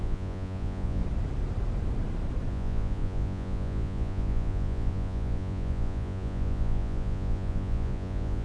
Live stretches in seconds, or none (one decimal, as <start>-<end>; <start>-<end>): 1.0-2.5